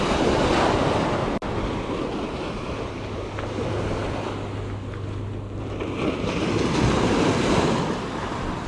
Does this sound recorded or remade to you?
recorded